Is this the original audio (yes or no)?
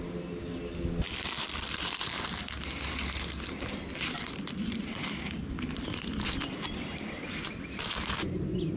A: yes